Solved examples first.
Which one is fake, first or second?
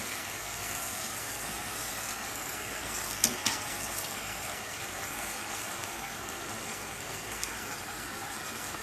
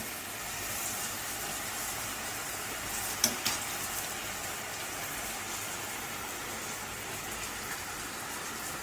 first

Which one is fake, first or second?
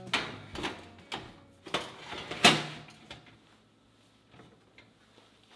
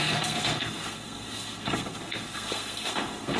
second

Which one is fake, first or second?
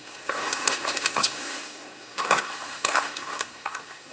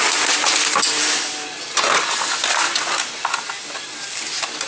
first